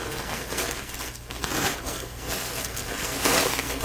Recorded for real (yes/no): no